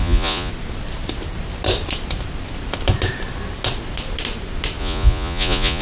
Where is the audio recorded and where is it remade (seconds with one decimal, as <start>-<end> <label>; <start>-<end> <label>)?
0.0-0.5 remade; 0.5-4.8 recorded; 4.8-5.8 remade

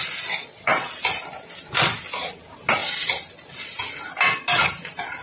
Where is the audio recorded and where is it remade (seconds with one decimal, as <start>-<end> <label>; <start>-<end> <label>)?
0.0-0.4 recorded; 0.4-1.0 remade; 1.0-5.2 recorded

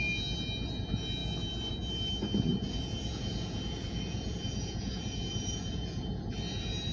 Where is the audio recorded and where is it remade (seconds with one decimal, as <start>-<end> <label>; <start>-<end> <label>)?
0.0-2.5 recorded; 2.5-6.2 remade; 6.2-6.9 recorded

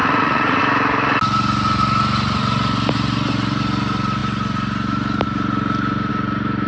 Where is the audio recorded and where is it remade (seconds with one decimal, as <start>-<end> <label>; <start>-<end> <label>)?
0.0-0.6 remade; 0.6-6.7 recorded

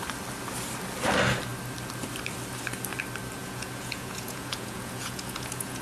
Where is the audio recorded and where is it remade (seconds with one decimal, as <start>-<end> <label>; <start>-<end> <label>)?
0.0-3.4 recorded; 3.4-5.8 remade

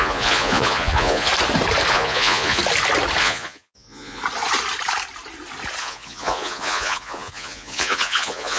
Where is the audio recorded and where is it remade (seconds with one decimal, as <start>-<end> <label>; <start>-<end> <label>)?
0.0-1.3 remade; 1.3-1.9 recorded; 1.9-2.6 remade; 2.6-3.2 recorded; 3.2-4.2 remade; 4.2-5.8 recorded; 5.8-8.6 remade